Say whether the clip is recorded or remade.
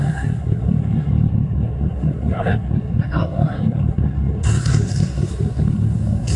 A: remade